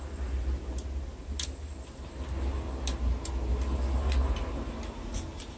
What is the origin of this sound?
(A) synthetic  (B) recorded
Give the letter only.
B